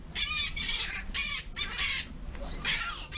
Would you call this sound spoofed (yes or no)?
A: no